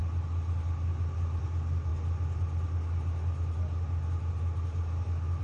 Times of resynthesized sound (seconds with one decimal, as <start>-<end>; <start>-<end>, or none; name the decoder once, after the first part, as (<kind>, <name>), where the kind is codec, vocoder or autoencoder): none

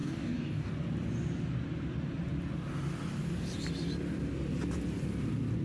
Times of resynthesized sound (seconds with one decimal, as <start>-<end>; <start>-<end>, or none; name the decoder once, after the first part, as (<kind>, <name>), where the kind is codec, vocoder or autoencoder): 0.0-0.7 (codec, DAC)

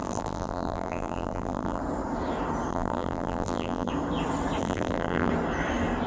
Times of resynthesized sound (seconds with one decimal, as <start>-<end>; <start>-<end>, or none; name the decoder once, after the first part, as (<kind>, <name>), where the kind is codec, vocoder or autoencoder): 0.0-1.8 (vocoder, BigVGAN v2); 2.7-3.9; 4.6-5.3

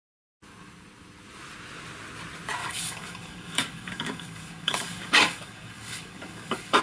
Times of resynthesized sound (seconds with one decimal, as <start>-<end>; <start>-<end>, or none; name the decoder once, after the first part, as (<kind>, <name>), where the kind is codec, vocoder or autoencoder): 2.6-6.8 (codec, DAC)